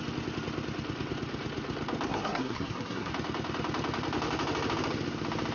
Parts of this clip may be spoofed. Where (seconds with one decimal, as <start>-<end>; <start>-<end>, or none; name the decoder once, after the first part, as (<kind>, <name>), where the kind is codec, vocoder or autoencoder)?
2.1-3.1 (codec, SNAC)